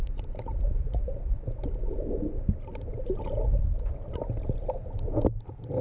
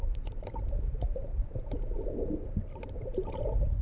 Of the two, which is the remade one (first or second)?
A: second